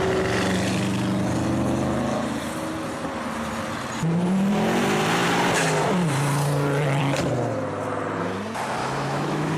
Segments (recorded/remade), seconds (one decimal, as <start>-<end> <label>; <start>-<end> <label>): 0.0-8.8 recorded; 8.8-9.6 remade